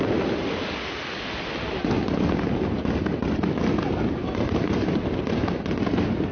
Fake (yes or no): no